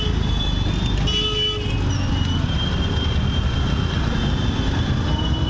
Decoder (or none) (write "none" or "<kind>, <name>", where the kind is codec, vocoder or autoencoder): none